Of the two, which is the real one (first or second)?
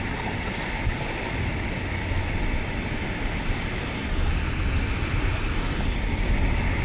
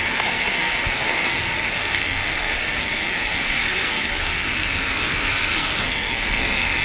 first